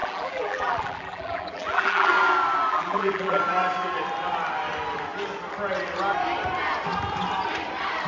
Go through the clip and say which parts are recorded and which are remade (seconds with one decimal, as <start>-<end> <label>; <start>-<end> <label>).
0.0-2.1 remade; 2.1-2.7 recorded; 2.7-3.4 remade; 3.4-8.1 recorded